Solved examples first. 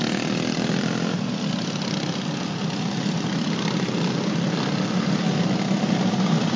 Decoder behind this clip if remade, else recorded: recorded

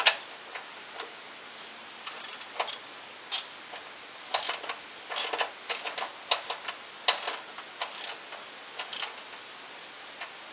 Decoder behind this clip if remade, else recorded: recorded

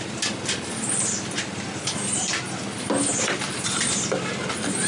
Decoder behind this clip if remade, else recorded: recorded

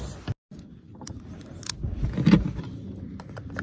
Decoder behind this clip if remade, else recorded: recorded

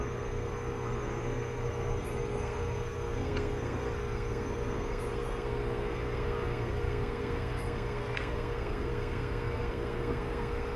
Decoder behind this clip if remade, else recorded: remade, codec, SNAC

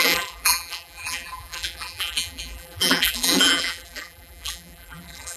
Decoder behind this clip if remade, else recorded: remade, vocoder, BigVGAN v2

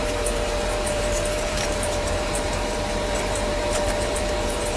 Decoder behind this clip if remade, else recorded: remade, vocoder, BigVGAN v2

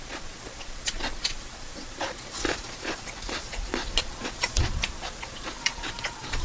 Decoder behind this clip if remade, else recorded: remade, vocoder, Vocos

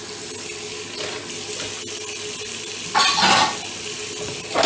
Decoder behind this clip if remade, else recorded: recorded